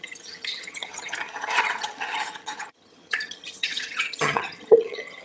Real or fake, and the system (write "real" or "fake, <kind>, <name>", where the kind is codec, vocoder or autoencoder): fake, vocoder, HiFi-GAN